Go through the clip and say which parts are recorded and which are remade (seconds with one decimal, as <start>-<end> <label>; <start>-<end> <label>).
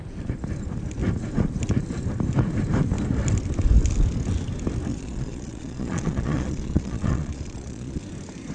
0.0-4.9 recorded; 4.9-8.0 remade; 8.0-8.5 recorded